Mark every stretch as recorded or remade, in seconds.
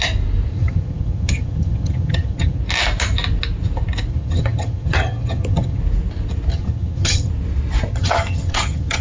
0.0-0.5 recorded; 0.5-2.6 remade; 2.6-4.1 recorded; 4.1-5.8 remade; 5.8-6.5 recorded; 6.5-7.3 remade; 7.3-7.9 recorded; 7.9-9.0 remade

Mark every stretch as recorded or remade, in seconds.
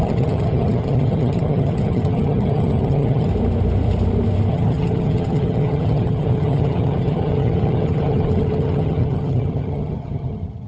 0.0-3.3 remade; 3.3-4.5 recorded; 4.5-10.7 remade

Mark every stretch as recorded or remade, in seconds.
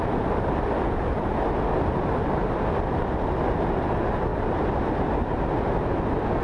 0.0-4.3 recorded; 4.3-5.4 remade; 5.4-6.4 recorded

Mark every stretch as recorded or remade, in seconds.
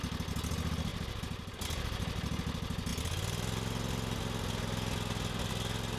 0.0-6.0 recorded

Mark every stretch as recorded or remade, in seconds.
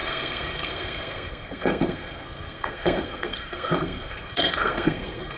0.0-5.4 remade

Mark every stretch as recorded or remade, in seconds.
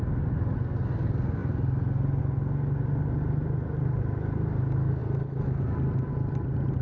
0.0-6.8 recorded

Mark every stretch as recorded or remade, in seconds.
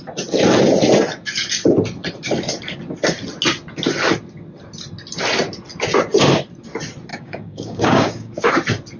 0.0-7.1 recorded; 7.1-8.5 remade; 8.5-9.0 recorded